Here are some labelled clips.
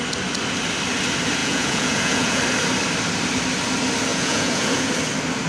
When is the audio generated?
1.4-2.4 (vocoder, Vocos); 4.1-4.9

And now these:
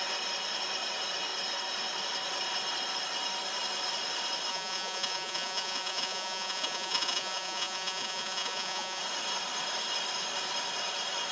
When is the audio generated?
4.5-9.0 (vocoder, Vocos)

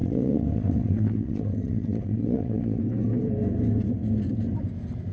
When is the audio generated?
0.0-2.8 (vocoder, WaveNeXt)

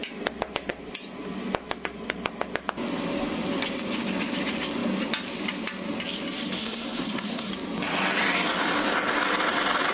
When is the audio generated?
6.6-7.5 (codec, SNAC)

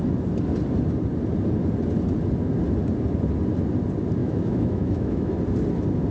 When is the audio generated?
4.2-5.3 (autoencoder, DAC-VAE)

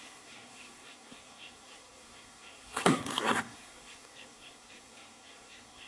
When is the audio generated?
0.0-5.9 (codec, SNAC)

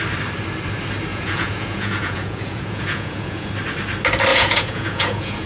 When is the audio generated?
1.1-3.5 (vocoder, Vocos); 4.3-5.5

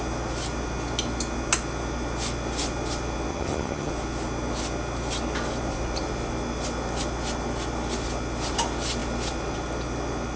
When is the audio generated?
3.3-3.9 (vocoder, HiFi-GAN)